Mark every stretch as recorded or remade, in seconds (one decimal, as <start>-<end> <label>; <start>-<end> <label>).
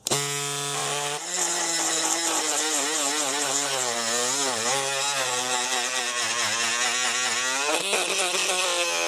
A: 0.0-0.8 recorded; 0.8-1.6 remade; 1.6-9.1 recorded